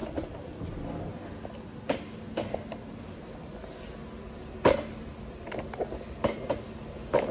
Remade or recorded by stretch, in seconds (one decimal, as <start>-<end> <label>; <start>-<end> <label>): 0.0-7.3 recorded

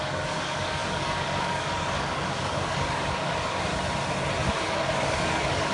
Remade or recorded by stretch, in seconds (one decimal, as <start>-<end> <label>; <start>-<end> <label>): 0.0-3.7 remade; 3.7-4.5 recorded; 4.5-5.7 remade

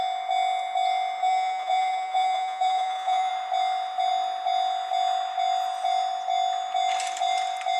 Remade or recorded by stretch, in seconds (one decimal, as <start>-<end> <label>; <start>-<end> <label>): 0.0-1.2 recorded; 1.2-3.3 remade; 3.3-7.8 recorded

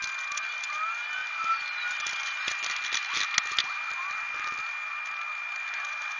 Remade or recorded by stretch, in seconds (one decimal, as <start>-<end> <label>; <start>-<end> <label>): 0.0-6.2 recorded

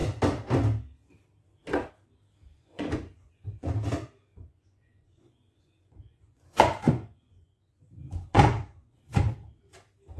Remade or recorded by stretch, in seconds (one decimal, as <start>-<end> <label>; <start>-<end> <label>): 0.0-2.5 recorded; 2.5-3.7 remade; 3.7-4.3 recorded; 4.3-9.2 remade; 9.2-10.2 recorded

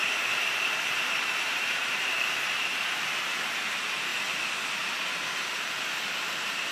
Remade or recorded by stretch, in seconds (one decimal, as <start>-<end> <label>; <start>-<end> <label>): 0.0-4.1 remade; 4.1-6.2 recorded; 6.2-6.7 remade